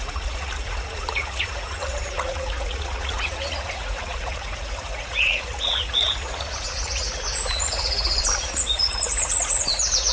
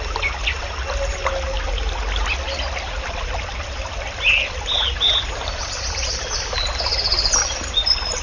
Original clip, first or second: second